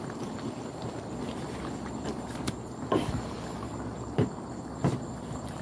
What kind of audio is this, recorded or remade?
remade